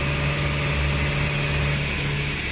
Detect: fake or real real